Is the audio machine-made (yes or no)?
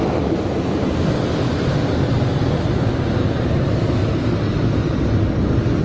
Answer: no